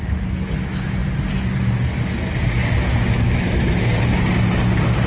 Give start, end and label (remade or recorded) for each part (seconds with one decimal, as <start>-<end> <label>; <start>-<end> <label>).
0.0-5.1 recorded